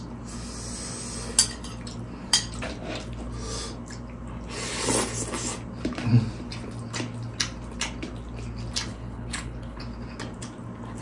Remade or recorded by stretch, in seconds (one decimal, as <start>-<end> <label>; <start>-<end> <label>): 0.0-8.9 recorded; 8.9-9.8 remade; 9.8-11.0 recorded